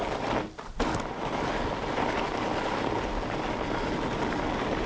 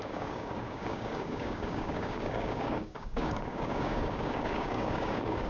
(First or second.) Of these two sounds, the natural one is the first